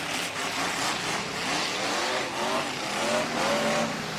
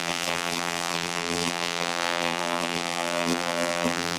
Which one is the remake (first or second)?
second